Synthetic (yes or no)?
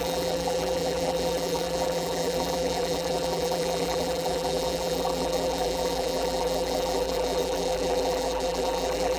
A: yes